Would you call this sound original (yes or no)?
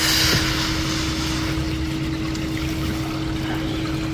yes